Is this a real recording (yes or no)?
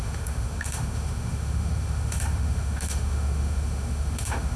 no